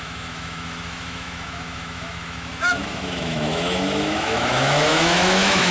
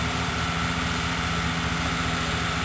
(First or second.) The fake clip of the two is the first